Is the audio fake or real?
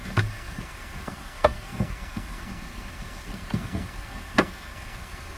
fake